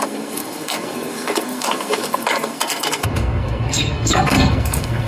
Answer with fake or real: fake